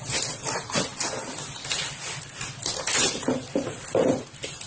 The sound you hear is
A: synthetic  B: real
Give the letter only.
B